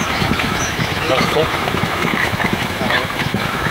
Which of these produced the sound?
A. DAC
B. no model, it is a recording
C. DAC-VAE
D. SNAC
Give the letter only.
C